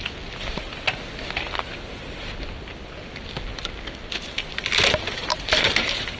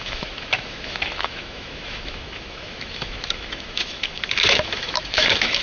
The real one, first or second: first